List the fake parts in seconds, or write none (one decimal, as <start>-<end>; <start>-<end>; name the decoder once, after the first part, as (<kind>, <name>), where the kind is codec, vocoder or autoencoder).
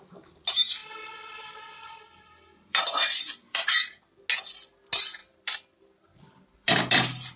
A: 0.8-4.2 (vocoder, BigVGAN v2); 5.2-7.0